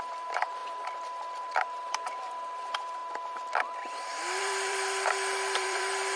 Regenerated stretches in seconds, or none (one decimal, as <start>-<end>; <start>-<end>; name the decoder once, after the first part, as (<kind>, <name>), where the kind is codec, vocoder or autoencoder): 0.0-0.6 (vocoder, BigVGAN v2); 1.4-3.0; 4.4-6.2

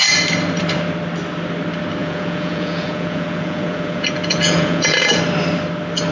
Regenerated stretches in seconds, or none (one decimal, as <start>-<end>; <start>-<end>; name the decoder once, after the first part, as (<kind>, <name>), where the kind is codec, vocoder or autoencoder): 2.0-5.2 (vocoder, Vocos)

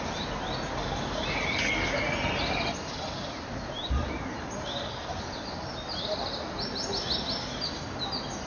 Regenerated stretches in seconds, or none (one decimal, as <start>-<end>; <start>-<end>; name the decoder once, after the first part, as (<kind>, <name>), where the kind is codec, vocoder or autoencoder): none